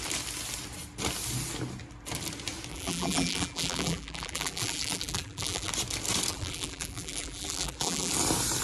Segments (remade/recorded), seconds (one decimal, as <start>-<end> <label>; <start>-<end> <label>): 0.0-2.7 recorded; 2.7-5.7 remade; 5.7-6.3 recorded; 6.3-8.1 remade; 8.1-8.6 recorded